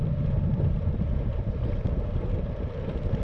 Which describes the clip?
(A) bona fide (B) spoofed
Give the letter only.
B